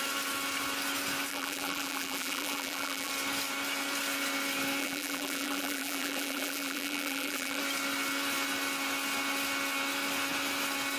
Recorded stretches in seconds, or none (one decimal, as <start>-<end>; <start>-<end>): 0.0-1.3; 3.1-4.8; 7.6-11.0